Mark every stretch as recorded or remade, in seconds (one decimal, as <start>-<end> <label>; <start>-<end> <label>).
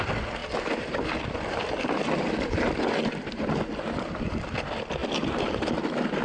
0.0-6.2 recorded